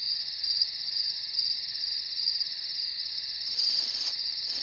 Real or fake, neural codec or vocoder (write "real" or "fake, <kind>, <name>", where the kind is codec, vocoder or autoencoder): fake, vocoder, Vocos